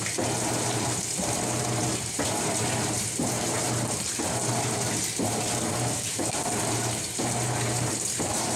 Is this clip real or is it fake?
fake